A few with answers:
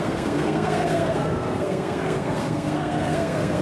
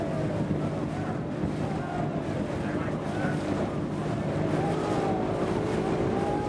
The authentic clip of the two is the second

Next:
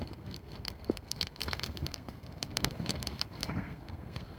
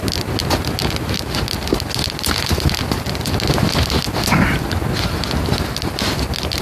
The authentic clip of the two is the second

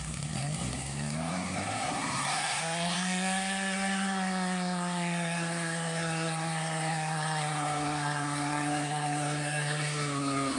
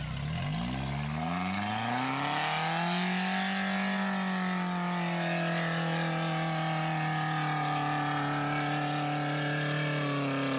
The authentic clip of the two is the second